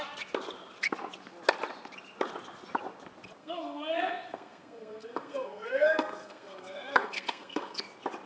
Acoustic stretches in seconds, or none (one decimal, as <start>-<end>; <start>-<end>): 0.0-3.4; 7.8-8.3